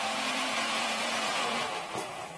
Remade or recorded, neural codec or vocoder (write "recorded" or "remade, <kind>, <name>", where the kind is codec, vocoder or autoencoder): remade, vocoder, Vocos